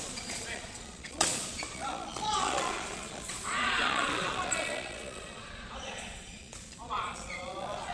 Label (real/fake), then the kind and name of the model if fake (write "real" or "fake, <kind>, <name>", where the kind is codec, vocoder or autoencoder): fake, vocoder, Vocos